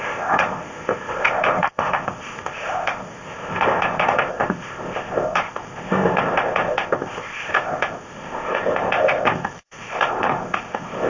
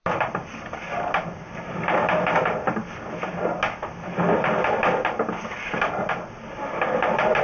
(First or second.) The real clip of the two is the second